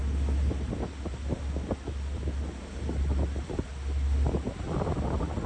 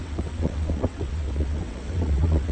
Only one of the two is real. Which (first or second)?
first